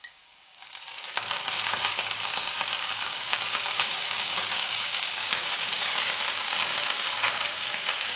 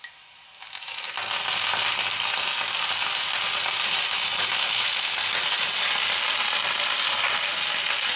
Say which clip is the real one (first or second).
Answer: second